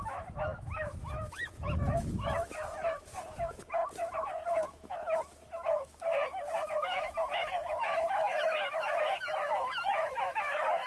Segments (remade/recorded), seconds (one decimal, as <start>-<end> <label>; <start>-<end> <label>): 0.0-10.9 remade